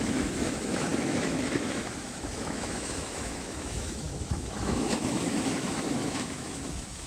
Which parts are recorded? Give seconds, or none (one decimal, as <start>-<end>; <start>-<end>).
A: none